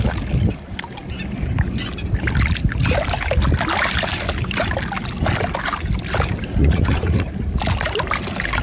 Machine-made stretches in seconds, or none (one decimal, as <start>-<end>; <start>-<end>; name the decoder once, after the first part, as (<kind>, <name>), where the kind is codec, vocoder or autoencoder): 6.6-7.3 (vocoder, Vocos)